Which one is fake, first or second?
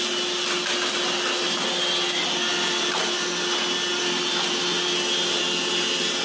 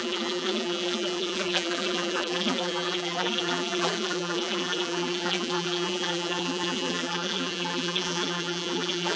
second